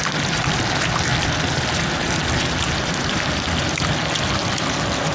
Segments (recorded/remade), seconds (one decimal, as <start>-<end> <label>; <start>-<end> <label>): 0.0-5.1 recorded